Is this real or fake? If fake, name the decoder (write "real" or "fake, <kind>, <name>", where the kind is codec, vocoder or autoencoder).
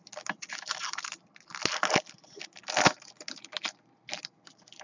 real